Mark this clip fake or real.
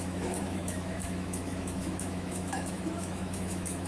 fake